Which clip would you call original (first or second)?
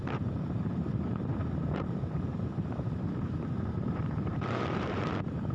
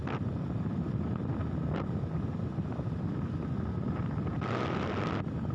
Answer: second